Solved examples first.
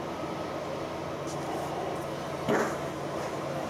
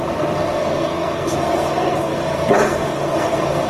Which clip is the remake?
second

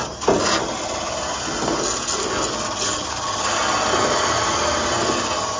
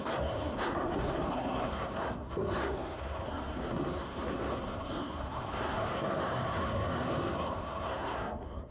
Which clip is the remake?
second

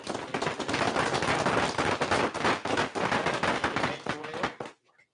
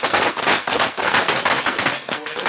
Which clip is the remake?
second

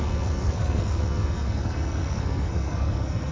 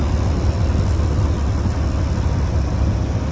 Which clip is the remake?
first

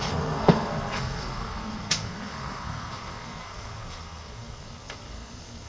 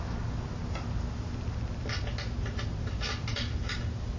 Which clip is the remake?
first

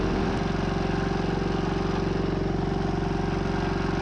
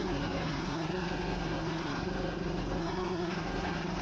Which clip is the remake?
second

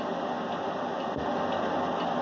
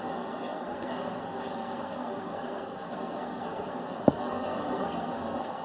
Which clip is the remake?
second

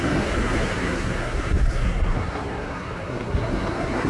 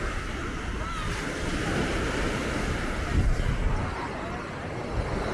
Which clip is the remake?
first